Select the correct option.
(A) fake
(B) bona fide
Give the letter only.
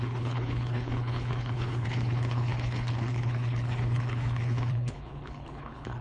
A